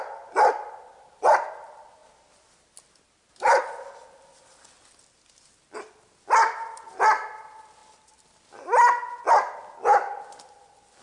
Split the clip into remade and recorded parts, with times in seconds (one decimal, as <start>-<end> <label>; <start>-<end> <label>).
0.0-11.0 recorded